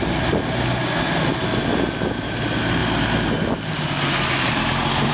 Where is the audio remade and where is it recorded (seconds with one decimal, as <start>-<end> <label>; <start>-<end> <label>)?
0.0-5.1 recorded